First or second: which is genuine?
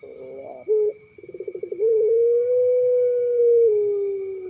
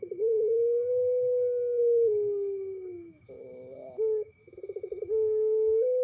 first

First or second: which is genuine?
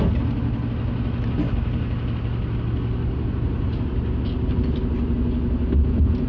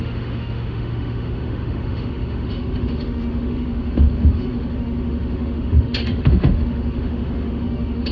first